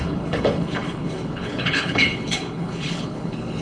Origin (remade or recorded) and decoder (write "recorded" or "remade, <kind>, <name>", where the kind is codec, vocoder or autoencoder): remade, codec, HILCodec